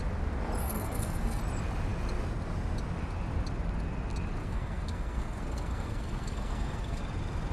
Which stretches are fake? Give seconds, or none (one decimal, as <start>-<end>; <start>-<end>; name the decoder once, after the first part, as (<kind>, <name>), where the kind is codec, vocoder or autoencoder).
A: 0.6-1.4 (codec, SNAC); 4.4-7.0